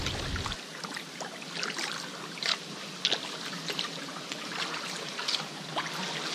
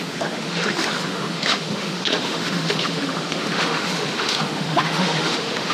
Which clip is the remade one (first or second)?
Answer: second